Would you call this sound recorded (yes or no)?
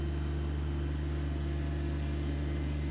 yes